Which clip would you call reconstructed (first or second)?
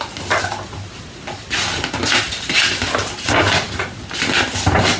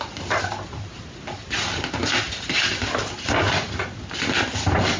second